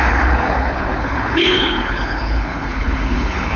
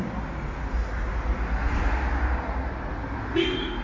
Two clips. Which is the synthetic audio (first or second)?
first